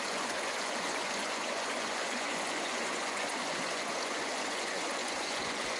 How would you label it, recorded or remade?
remade